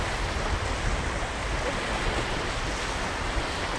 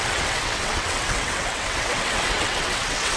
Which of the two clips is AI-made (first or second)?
second